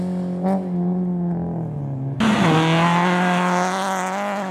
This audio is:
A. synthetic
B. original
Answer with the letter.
B